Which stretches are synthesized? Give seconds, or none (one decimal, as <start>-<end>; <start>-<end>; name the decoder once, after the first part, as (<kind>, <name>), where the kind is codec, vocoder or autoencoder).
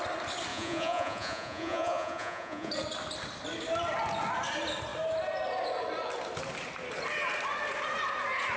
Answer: 0.5-2.7 (vocoder, Vocos)